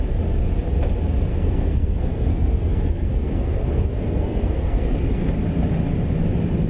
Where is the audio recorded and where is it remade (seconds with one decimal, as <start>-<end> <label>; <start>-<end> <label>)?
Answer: 0.0-1.3 recorded; 1.3-5.3 remade; 5.3-6.7 recorded